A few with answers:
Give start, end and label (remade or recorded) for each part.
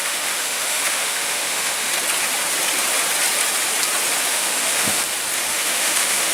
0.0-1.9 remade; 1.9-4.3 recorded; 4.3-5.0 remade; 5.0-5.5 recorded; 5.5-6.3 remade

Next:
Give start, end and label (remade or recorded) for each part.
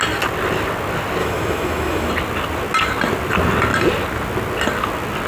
0.0-1.2 recorded; 1.2-2.1 remade; 2.1-5.3 recorded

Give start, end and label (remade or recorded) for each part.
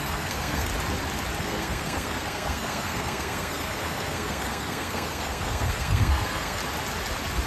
0.0-0.7 remade; 0.7-1.4 recorded; 1.4-6.6 remade; 6.6-7.5 recorded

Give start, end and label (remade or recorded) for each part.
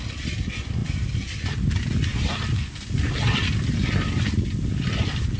0.0-5.4 recorded